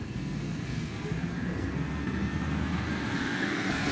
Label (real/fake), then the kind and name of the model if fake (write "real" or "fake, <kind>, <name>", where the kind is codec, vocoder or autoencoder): fake, codec, SNAC